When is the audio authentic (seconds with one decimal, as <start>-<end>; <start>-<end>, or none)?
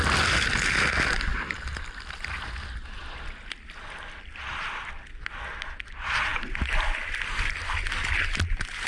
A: 0.0-8.9